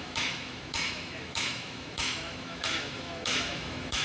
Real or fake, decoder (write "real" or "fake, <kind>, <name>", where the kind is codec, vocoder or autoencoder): fake, autoencoder, DAC-VAE